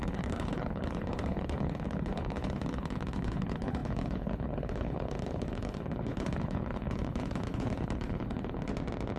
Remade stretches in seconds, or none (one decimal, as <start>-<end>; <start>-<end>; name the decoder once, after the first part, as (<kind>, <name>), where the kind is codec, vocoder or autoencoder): 0.0-8.7 (codec, HILCodec)